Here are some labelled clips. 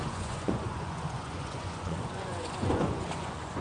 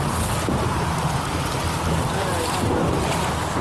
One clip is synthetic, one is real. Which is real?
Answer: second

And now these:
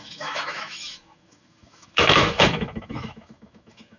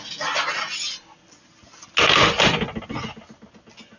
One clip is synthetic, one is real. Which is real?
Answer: second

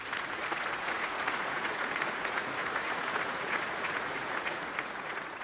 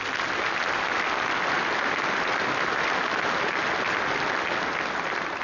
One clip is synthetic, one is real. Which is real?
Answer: second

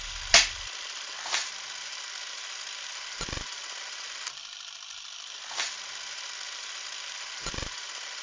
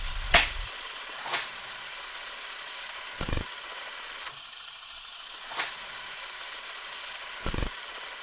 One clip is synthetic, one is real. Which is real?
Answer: first